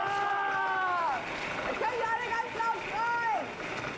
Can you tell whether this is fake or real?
real